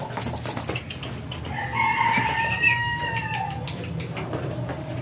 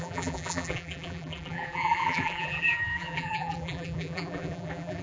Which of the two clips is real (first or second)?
first